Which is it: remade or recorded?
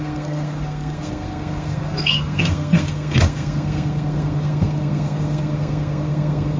remade